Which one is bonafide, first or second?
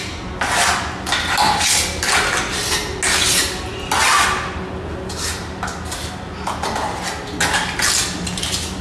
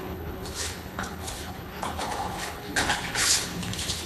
first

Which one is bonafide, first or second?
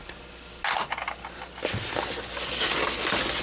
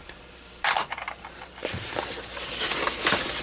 first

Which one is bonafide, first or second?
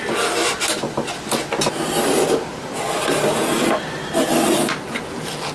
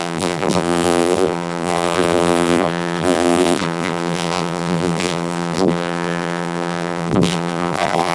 first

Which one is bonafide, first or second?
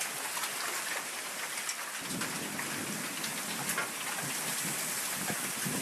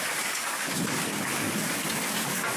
first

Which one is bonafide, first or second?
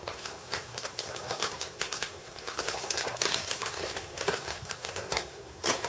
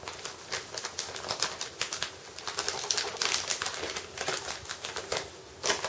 second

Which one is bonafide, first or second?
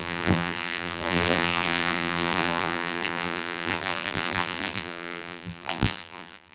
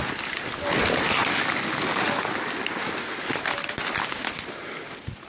second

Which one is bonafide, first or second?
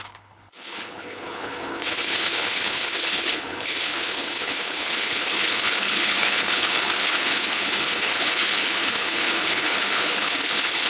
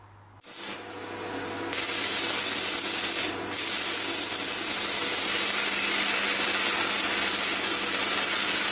second